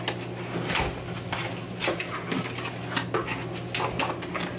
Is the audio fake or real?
real